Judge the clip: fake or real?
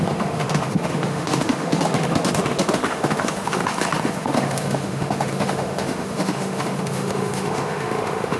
fake